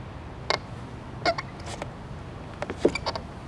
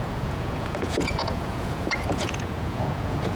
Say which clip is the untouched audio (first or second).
first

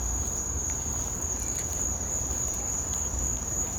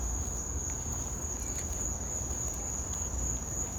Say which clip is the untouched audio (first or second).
second